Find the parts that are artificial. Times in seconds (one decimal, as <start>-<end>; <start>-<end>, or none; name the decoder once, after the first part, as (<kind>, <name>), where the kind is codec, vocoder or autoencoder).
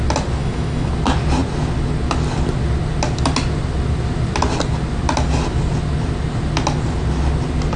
0.4-0.9 (autoencoder, DAC-VAE)